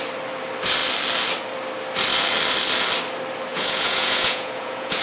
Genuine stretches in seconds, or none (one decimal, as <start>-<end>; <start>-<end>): 0.0-3.5